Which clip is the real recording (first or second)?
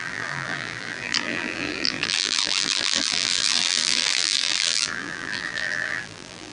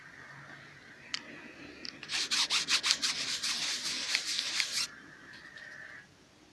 second